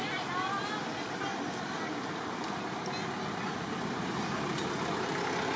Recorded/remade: recorded